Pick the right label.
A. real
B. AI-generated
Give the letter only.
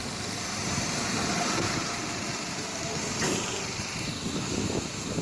B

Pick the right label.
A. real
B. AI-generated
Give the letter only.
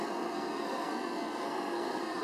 B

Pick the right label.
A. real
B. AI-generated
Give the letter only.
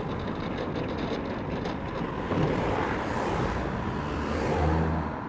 A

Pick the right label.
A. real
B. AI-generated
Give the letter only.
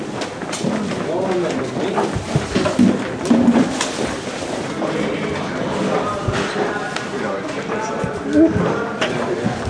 A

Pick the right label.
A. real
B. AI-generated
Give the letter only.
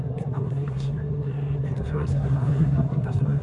B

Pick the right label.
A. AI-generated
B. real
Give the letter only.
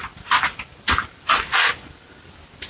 B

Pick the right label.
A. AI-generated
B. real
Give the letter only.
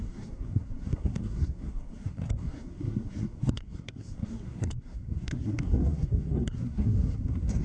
A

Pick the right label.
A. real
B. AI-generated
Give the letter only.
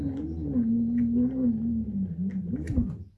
A